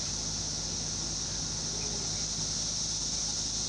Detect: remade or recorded recorded